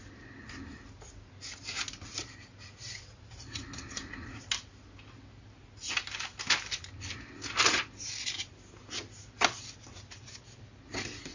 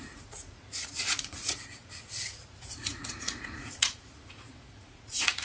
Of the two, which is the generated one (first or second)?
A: second